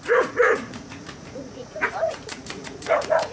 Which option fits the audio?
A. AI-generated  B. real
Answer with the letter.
A